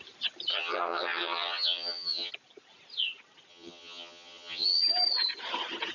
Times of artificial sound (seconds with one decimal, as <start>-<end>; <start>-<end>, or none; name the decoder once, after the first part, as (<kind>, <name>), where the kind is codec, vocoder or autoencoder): 0.5-2.3 (vocoder, HiFi-GAN); 3.5-4.8